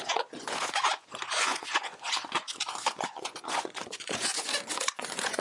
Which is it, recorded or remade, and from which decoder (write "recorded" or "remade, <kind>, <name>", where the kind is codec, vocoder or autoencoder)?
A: remade, vocoder, Vocos